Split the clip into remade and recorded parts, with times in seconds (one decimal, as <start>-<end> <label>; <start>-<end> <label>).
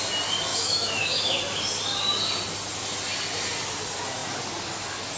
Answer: 0.0-0.5 recorded; 0.5-1.4 remade; 1.4-5.2 recorded